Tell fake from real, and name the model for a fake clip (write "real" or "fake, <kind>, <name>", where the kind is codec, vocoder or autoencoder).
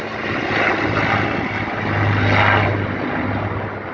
real